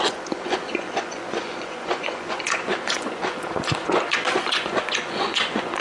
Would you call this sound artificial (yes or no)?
yes